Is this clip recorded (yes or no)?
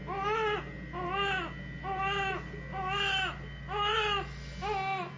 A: yes